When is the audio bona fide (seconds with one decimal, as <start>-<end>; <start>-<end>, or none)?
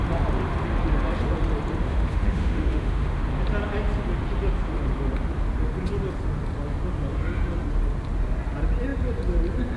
0.0-1.8; 3.2-9.8